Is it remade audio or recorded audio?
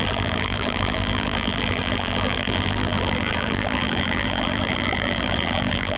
remade